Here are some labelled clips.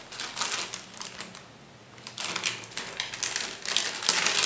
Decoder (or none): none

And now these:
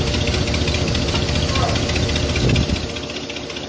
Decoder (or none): none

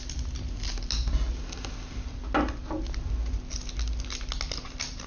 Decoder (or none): none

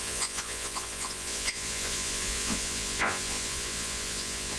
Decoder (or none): vocoder, Vocos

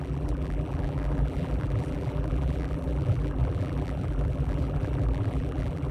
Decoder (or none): vocoder, BigVGAN v2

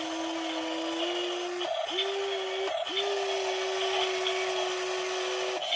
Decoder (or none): none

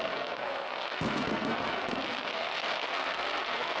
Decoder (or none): codec, SNAC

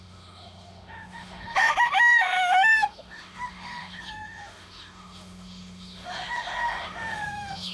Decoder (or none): autoencoder, DAC-VAE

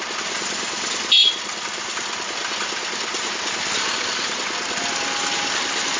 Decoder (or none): none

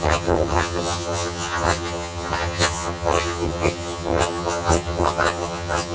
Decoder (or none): vocoder, HiFi-GAN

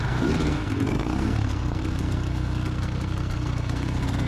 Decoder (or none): codec, SNAC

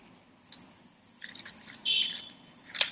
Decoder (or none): none